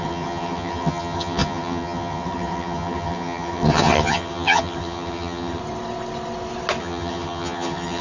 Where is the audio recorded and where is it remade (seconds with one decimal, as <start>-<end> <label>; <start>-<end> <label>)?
0.0-5.6 remade; 5.6-6.8 recorded; 6.8-8.0 remade